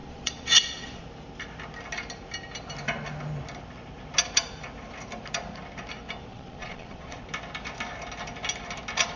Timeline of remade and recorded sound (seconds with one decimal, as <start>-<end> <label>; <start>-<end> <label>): 0.0-1.0 remade; 1.0-6.3 recorded; 6.3-7.2 remade; 7.2-9.2 recorded